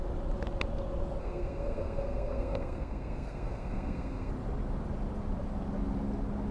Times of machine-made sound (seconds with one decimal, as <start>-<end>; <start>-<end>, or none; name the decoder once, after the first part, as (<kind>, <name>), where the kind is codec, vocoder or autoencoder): 1.2-4.3 (codec, SNAC)

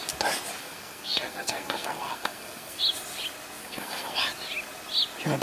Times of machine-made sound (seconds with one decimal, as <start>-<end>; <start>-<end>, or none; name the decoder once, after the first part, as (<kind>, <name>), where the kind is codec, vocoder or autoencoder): 0.6-2.8 (codec, SNAC); 3.6-4.2

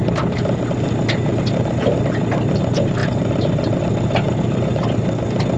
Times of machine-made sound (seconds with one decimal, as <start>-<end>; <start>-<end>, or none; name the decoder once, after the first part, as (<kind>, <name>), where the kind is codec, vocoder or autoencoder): none

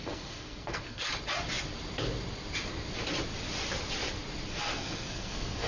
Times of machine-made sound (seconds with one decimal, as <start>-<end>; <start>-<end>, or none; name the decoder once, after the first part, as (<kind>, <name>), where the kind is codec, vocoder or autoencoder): 0.0-1.1 (codec, SNAC); 4.5-5.7

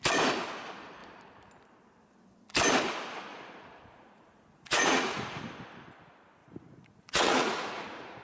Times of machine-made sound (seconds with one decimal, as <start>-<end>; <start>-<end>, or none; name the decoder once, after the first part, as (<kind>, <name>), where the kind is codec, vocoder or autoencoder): 3.3-5.5 (vocoder, Vocos); 6.4-8.2

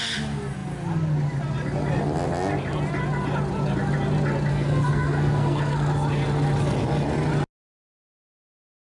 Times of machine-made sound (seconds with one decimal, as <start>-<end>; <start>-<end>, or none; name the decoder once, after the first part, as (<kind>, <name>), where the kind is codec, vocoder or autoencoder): 4.5-5.9 (codec, SNAC)

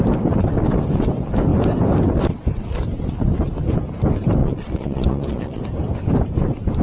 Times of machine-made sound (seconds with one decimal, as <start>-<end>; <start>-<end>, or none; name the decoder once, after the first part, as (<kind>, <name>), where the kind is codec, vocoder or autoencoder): 4.4-5.6 (vocoder, Vocos)

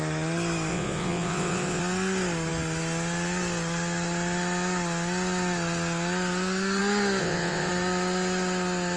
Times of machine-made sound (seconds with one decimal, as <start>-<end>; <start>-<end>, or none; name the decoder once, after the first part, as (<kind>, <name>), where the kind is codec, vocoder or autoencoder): 0.7-1.8 (vocoder, WaveNeXt); 7.2-7.7